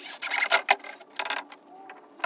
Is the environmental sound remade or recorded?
recorded